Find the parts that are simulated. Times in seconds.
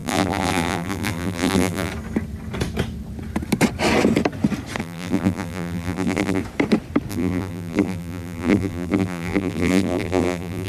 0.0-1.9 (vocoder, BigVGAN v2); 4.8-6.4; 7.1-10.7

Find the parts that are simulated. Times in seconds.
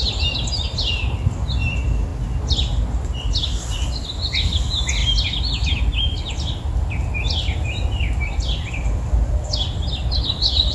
none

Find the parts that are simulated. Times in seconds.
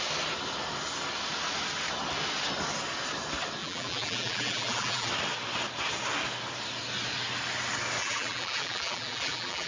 3.6-5.1 (vocoder, BigVGAN v2); 8.0-9.7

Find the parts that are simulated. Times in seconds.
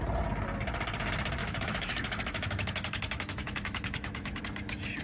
1.4-4.4 (autoencoder, DAC-VAE)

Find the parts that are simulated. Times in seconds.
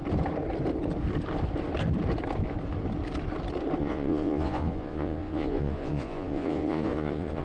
3.8-7.4 (vocoder, Vocos)